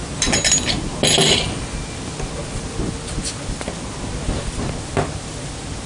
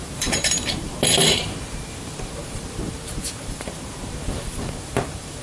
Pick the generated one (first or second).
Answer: second